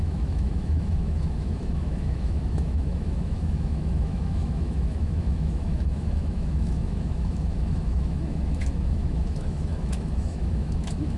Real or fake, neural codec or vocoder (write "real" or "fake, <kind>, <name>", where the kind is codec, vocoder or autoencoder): fake, autoencoder, DAC-VAE